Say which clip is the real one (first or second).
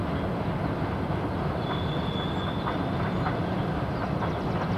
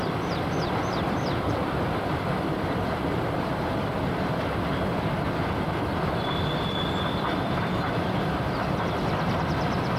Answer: first